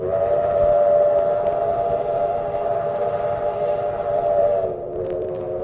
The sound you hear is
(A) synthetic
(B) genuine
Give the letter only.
A